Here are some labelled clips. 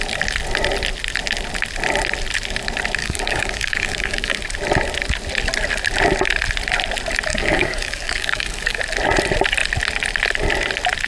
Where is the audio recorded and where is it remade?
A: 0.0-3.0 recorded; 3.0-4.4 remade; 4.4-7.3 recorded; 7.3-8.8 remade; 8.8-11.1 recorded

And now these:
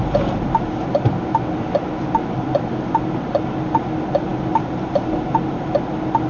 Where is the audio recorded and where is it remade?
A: 0.0-6.3 recorded

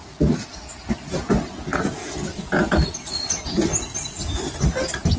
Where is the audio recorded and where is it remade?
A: 0.0-5.2 recorded

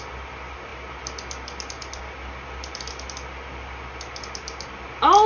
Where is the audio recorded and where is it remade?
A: 0.0-5.3 recorded

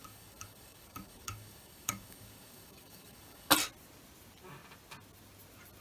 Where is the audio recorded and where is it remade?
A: 0.0-3.5 remade; 3.5-5.8 recorded

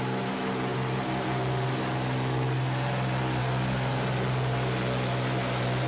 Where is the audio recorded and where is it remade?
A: 0.0-5.9 recorded

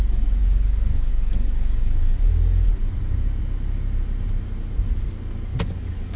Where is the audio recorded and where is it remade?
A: 0.0-2.7 remade; 2.7-5.6 recorded; 5.6-6.2 remade